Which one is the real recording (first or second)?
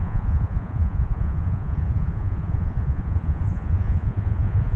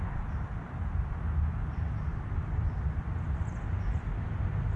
second